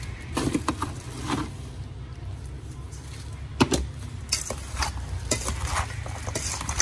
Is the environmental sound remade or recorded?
recorded